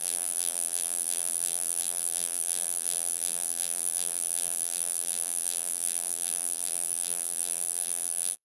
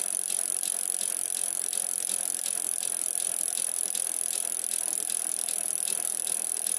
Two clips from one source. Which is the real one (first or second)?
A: second